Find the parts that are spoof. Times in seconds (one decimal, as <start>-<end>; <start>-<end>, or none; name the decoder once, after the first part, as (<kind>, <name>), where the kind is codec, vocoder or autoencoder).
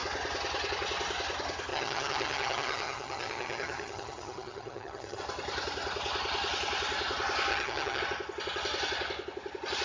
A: 1.7-5.2 (vocoder, HiFi-GAN); 7.5-8.0